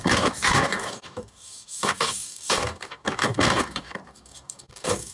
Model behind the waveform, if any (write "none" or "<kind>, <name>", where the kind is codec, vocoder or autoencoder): codec, DAC